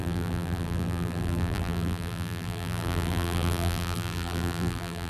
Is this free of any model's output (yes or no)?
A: no